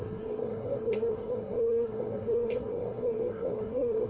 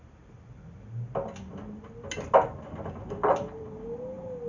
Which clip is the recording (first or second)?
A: second